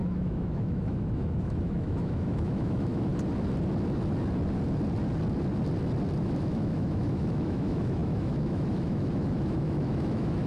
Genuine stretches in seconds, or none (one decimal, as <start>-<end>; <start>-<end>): 3.1-6.2